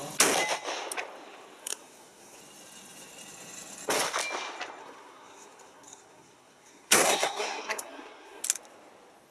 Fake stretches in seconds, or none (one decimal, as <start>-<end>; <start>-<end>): 1.6-2.4; 4.8-8.4